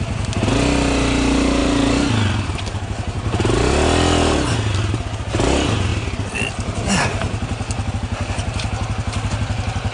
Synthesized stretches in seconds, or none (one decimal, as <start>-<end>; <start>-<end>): none